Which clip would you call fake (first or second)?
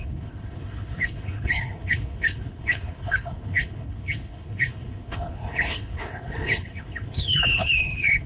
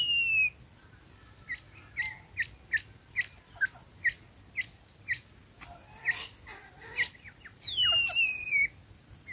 first